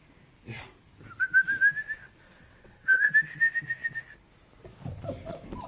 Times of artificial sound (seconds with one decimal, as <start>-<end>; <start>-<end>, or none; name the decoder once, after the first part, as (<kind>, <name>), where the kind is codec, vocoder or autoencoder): 2.2-3.1 (vocoder, WaveNeXt)